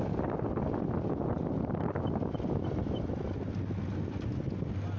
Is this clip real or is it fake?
real